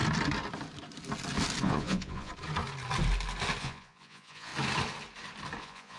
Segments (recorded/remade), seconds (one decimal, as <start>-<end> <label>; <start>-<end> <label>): 0.0-1.6 recorded; 1.6-2.3 remade; 2.3-3.6 recorded; 3.6-4.5 remade; 4.5-5.6 recorded; 5.6-6.0 remade